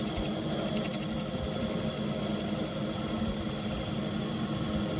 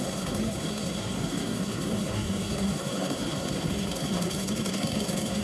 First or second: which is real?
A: first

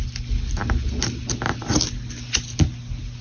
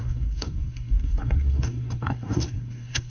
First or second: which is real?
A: first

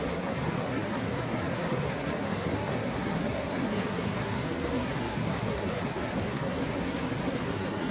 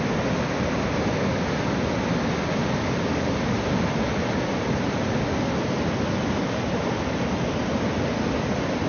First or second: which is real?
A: second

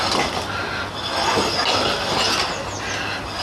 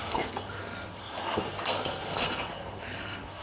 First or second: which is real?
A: first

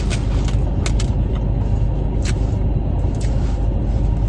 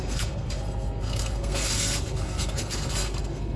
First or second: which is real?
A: first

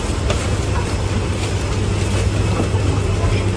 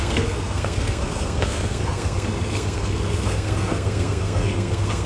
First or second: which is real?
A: first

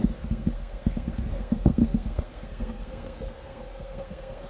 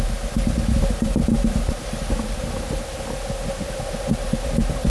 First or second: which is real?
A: second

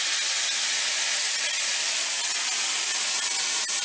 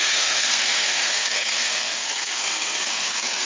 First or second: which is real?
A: first